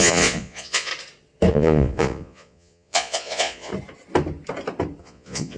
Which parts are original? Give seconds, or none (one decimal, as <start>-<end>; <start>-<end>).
0.9-1.5; 3.7-5.0